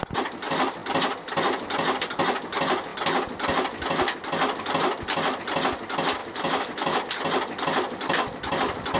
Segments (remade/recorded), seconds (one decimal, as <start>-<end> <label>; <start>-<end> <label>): 0.0-6.2 recorded; 6.2-7.0 remade; 7.0-9.0 recorded